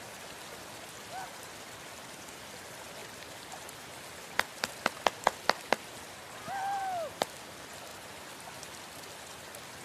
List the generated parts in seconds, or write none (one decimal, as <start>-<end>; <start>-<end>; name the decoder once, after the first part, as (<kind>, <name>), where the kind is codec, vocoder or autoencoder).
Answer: none

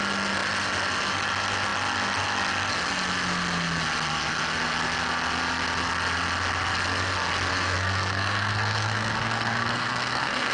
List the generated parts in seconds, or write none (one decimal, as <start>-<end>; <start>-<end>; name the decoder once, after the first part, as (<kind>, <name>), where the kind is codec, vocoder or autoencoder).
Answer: 7.5-10.5 (codec, SNAC)

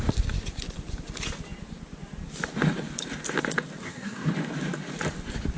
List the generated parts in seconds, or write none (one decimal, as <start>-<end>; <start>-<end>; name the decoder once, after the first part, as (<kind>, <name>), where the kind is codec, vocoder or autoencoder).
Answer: 3.8-4.3 (codec, SNAC)

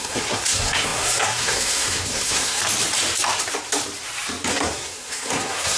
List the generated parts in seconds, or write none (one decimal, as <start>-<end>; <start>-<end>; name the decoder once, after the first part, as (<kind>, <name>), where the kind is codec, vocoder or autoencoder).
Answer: 0.0-2.6 (codec, SNAC); 4.5-5.8

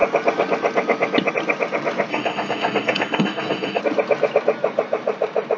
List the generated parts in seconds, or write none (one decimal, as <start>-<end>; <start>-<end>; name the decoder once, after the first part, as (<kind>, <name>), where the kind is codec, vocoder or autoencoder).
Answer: 2.1-3.8 (codec, SNAC)